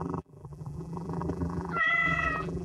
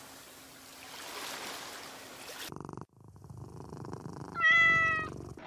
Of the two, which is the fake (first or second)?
first